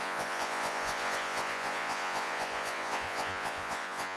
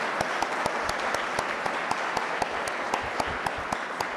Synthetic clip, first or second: first